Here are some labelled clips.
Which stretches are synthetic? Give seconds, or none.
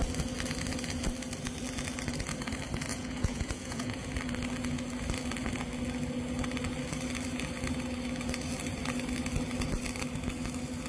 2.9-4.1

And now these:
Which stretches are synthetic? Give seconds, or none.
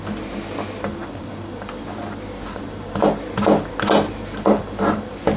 none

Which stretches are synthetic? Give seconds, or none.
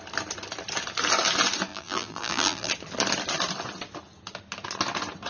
1.7-2.7